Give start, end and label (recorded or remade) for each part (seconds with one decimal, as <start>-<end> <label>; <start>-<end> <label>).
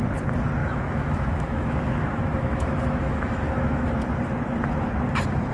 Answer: 0.0-0.6 recorded; 0.6-3.9 remade; 3.9-5.5 recorded